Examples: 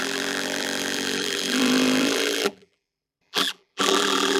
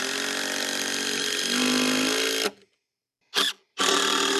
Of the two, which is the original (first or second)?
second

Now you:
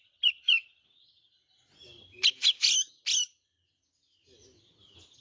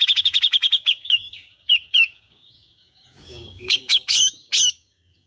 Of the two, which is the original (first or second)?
first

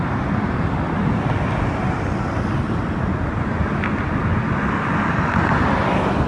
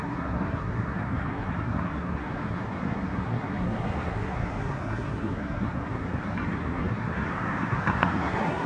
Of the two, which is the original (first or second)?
first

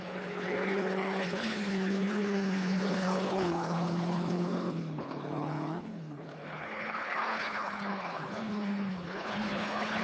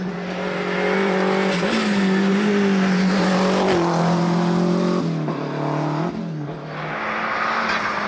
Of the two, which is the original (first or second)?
second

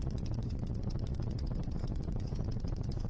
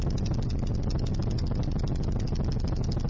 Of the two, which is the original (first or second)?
second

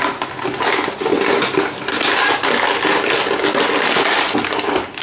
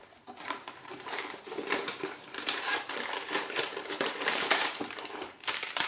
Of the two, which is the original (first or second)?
first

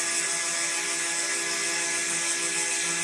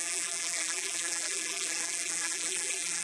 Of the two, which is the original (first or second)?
first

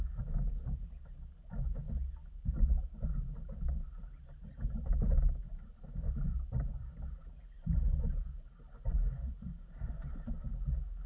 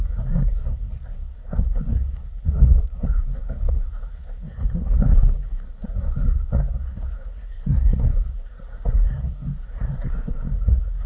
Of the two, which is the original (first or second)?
first